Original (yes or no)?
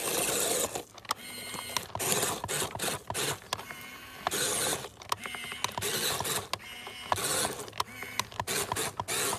yes